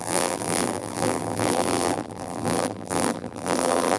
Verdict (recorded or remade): remade